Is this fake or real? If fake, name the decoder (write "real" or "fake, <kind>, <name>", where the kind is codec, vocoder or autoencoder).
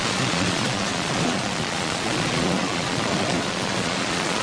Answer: fake, vocoder, Vocos